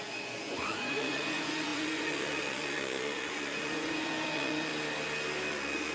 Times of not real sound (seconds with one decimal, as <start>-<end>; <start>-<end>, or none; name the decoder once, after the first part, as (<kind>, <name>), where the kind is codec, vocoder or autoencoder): 0.0-4.7 (vocoder, Vocos); 5.5-5.9